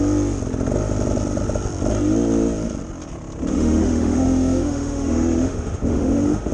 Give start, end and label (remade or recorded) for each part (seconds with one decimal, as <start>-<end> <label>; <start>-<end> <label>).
0.0-3.5 recorded; 3.5-6.5 remade